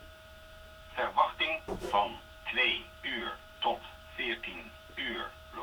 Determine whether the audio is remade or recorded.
remade